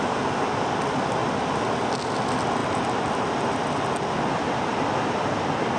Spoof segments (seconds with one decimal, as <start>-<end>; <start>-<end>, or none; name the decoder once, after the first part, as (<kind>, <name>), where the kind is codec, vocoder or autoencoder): none